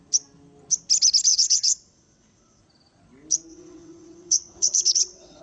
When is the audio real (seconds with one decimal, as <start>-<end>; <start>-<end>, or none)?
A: 0.0-1.3; 2.6-3.5